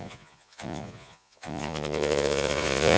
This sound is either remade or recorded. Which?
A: remade